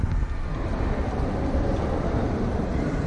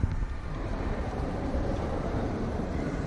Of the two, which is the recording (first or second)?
first